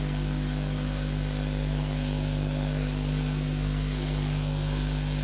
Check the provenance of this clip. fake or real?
fake